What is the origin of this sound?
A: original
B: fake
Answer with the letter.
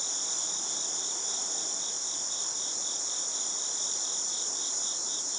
A